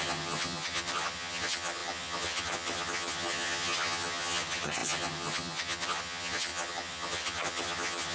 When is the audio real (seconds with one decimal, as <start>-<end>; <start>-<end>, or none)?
none